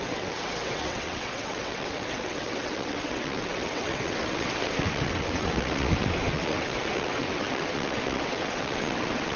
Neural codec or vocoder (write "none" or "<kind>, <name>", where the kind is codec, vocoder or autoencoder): vocoder, WaveNeXt